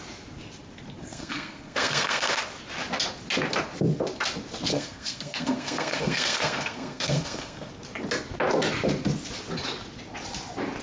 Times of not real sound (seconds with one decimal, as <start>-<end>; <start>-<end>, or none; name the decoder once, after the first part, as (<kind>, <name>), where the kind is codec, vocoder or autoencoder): 1.0-2.4 (codec, SNAC); 4.7-7.7